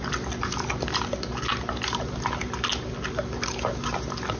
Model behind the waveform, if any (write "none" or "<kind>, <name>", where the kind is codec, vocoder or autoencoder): none